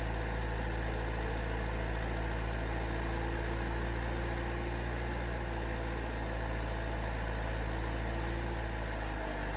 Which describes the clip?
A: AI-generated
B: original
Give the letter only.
B